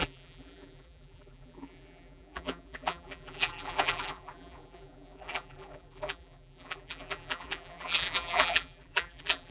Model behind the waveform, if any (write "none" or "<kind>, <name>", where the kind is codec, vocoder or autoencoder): vocoder, BigVGAN v2